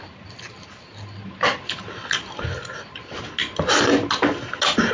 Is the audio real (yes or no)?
yes